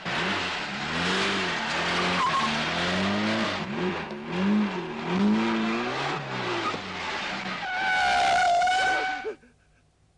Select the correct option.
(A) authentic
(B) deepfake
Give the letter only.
A